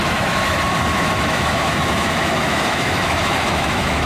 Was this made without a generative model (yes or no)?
no